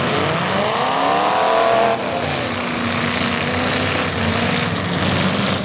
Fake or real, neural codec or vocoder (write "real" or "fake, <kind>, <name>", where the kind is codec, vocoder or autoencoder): real